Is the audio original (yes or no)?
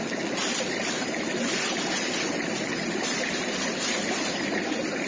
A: yes